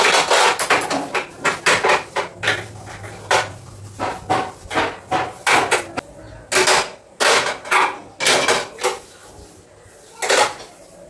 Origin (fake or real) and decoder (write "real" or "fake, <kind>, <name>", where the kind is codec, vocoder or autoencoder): real